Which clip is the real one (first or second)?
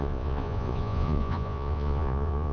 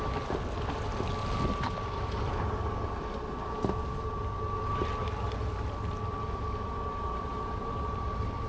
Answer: second